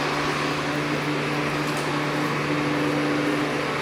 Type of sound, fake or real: real